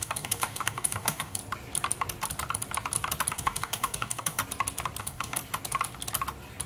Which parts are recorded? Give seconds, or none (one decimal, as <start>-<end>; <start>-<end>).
1.4-3.3; 4.4-5.0; 5.4-6.7